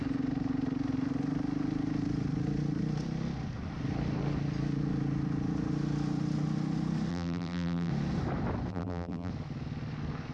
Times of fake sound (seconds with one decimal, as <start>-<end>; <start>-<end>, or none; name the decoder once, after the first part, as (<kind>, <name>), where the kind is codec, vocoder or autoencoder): 7.1-7.9 (vocoder, BigVGAN v2); 8.7-9.3